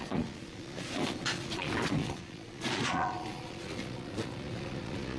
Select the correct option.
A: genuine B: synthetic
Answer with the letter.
B